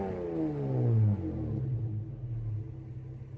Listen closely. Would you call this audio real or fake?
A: real